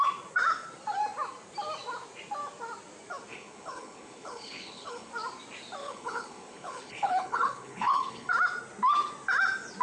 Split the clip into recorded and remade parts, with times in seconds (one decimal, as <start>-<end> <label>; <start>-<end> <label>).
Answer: 0.0-3.3 recorded; 3.3-5.1 remade; 5.1-5.8 recorded; 5.8-8.3 remade; 8.3-9.8 recorded